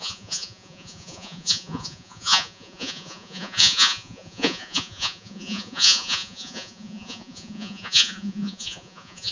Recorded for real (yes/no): no